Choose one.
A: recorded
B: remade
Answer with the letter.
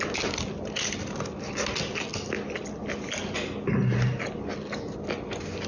A